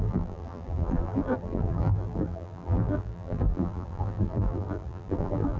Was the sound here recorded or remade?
remade